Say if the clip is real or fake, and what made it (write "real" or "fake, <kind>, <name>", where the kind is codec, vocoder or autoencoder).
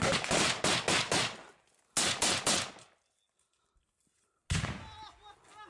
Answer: real